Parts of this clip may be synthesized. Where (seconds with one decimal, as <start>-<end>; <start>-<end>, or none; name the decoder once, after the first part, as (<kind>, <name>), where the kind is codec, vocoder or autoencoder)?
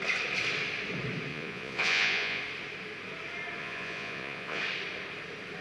1.3-2.4 (vocoder, Vocos); 3.6-4.6